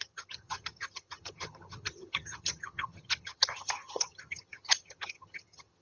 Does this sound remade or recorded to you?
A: remade